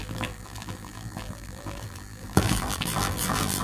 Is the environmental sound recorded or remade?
remade